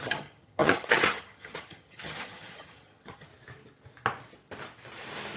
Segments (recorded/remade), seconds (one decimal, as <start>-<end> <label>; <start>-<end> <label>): 0.0-3.3 remade; 3.3-5.4 recorded